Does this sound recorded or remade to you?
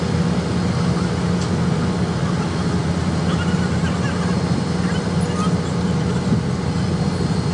recorded